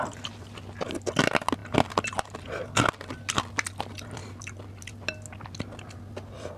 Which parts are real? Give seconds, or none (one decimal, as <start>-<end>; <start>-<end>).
0.0-6.6